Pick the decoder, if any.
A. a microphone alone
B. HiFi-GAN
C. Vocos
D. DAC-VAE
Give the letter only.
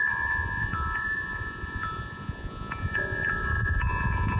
C